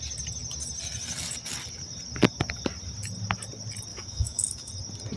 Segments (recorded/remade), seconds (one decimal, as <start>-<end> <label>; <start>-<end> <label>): 0.0-3.9 recorded; 3.9-4.7 remade; 4.7-5.2 recorded